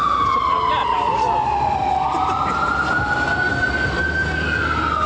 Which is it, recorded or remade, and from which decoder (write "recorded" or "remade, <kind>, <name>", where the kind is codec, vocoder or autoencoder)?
recorded